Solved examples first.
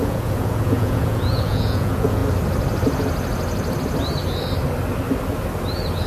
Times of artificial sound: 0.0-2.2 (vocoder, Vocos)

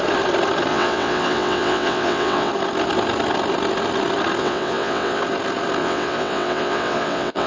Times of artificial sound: 0.7-2.5 (vocoder, WaveNeXt); 4.4-5.2; 5.8-7.5

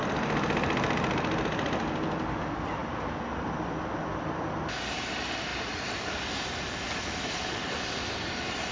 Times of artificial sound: 2.8-4.8 (vocoder, BigVGAN v2); 5.5-6.8

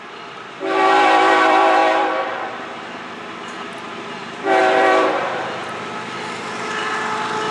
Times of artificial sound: 0.0-5.6 (vocoder, BigVGAN v2)

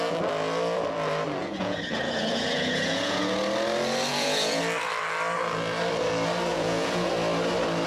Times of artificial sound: 1.4-3.2 (vocoder, Vocos); 4.1-4.6; 6.5-7.1

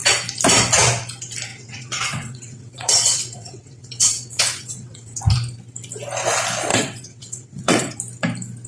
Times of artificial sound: 1.5-5.2 (vocoder, WaveNeXt); 6.7-8.0

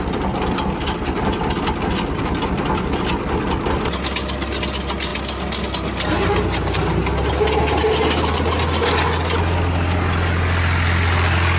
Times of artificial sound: none